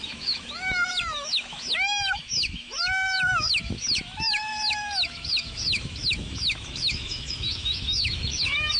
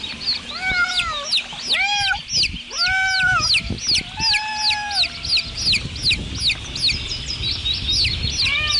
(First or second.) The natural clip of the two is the second